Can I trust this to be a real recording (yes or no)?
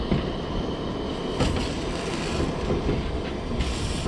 yes